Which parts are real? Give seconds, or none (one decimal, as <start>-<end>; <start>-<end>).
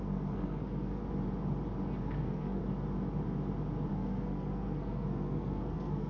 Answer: 1.0-2.0; 2.6-3.9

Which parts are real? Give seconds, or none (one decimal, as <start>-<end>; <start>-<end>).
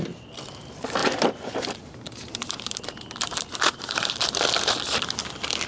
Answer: 0.0-1.0; 4.4-5.7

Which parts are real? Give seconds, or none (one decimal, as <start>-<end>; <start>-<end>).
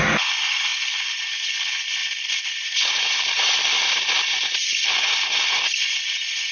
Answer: 0.0-2.0; 5.9-6.5